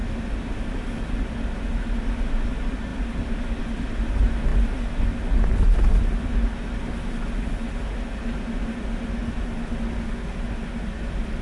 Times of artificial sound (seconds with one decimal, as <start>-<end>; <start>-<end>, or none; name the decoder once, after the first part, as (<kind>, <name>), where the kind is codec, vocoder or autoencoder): none